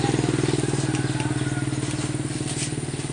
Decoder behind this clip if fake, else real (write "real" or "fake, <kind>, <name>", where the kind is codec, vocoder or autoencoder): real